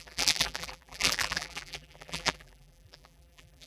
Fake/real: fake